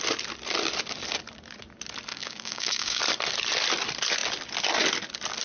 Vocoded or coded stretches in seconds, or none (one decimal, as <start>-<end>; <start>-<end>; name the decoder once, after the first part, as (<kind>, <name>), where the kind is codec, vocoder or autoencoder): 2.1-3.0 (codec, DAC)